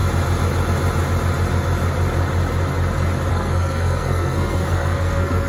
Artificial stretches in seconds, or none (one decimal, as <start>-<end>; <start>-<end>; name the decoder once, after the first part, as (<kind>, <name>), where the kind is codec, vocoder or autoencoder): 3.3-5.5 (codec, SNAC)